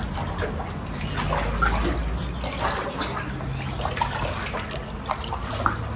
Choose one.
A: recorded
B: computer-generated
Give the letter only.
A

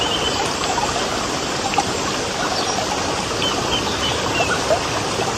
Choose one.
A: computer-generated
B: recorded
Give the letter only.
B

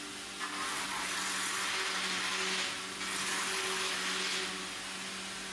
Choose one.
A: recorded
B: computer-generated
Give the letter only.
A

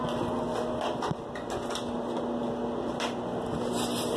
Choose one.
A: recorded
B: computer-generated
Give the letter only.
A